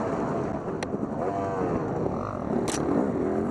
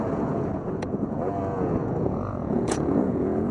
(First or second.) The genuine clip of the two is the first